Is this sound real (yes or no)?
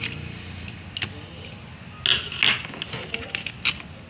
yes